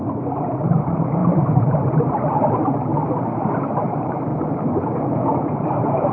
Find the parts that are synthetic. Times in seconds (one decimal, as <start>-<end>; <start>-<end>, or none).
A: 0.0-2.9; 3.7-4.3; 5.0-6.1